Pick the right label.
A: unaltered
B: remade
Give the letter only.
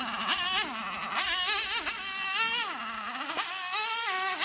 A